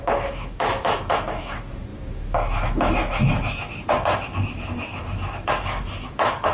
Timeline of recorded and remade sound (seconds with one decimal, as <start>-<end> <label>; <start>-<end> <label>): 0.0-6.5 remade